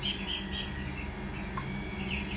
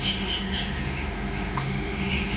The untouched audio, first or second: first